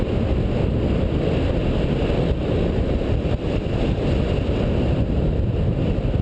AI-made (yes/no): no